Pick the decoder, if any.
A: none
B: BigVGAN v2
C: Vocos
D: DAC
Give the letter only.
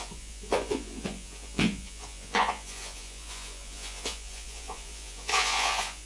C